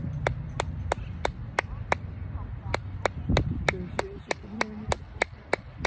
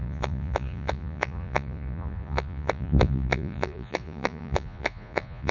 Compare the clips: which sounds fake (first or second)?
second